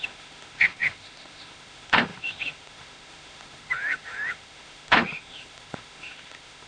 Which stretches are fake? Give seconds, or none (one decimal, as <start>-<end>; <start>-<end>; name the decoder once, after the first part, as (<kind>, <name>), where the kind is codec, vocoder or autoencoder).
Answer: 0.0-6.7 (autoencoder, DAC-VAE)

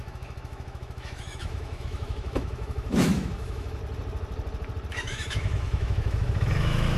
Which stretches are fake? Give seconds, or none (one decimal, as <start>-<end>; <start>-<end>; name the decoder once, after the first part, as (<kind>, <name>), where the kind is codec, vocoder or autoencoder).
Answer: 0.0-3.8 (autoencoder, DAC-VAE); 4.9-7.0

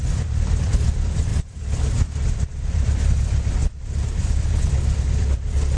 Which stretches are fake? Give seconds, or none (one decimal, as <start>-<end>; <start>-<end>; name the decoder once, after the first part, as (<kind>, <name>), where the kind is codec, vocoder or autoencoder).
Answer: 0.0-5.8 (vocoder, BigVGAN v2)